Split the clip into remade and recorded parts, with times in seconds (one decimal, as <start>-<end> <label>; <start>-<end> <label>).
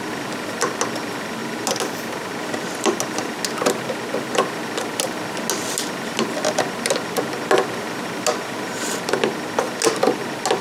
0.0-10.6 recorded